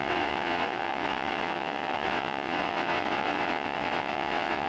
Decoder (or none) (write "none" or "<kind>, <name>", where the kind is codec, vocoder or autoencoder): vocoder, WaveNeXt